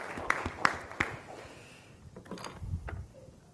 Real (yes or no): yes